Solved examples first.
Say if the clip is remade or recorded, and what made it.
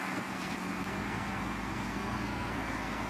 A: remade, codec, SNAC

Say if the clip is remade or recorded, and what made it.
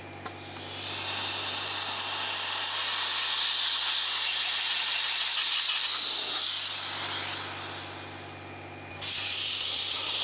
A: recorded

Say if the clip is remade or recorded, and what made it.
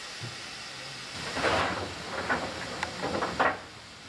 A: recorded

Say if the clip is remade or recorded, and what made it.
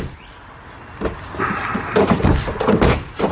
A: recorded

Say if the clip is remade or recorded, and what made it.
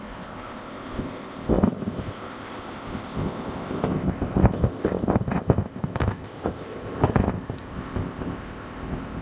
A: remade, codec, ZipCodec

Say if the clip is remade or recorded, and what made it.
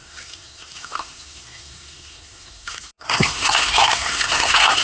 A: remade, codec, SNAC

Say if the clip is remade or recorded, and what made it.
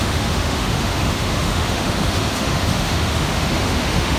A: remade, autoencoder, DAC-VAE